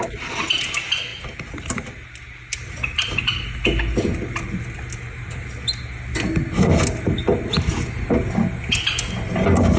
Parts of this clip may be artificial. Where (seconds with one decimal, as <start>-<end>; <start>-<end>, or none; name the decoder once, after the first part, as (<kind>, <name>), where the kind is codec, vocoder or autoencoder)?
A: none